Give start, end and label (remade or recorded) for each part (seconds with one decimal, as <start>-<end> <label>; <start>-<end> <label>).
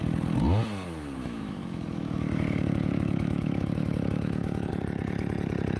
0.0-1.2 recorded; 1.2-4.7 remade; 4.7-5.8 recorded